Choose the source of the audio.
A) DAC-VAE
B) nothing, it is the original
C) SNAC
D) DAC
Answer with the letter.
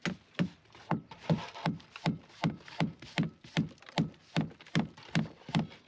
B